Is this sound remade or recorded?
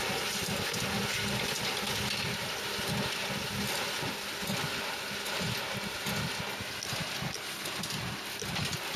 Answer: recorded